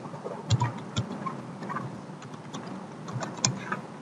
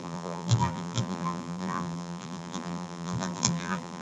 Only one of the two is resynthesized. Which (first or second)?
second